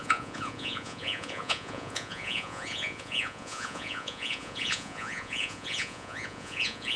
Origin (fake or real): fake